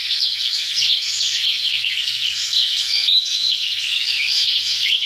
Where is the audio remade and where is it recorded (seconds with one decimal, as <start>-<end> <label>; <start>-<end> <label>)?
0.0-5.1 remade